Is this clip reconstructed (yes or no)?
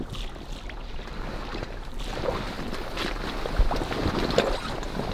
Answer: no